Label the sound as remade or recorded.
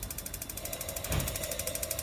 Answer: recorded